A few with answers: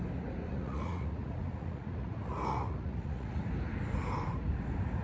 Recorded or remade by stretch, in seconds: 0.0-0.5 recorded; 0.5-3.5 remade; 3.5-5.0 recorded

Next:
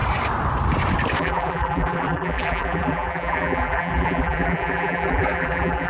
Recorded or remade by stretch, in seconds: 0.0-1.2 recorded; 1.2-5.9 remade

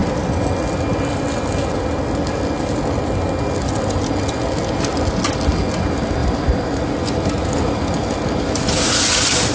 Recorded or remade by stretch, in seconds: 0.0-6.2 recorded; 6.2-9.1 remade; 9.1-9.5 recorded